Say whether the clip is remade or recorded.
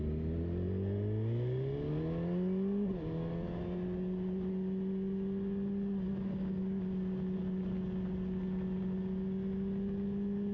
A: recorded